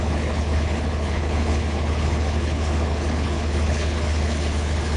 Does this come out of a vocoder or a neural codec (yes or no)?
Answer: yes